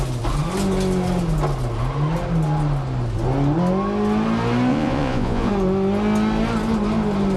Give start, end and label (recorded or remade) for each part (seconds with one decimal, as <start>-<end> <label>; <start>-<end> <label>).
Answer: 0.0-4.7 recorded; 4.7-5.5 remade; 5.5-7.4 recorded